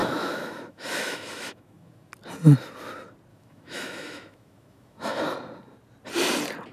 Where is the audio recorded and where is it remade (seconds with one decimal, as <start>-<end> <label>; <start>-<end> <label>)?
0.0-2.1 remade; 2.1-3.3 recorded; 3.3-5.2 remade; 5.2-6.7 recorded